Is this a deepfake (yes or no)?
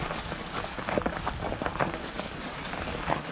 yes